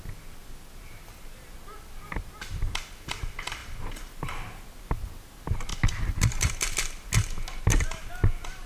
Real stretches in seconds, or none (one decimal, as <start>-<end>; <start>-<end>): 0.0-8.7